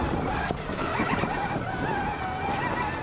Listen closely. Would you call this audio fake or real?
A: real